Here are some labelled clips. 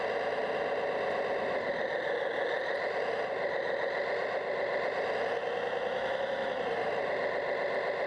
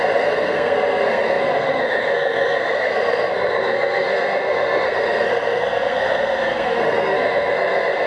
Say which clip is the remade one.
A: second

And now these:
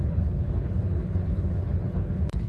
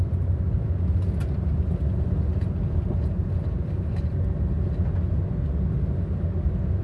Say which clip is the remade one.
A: first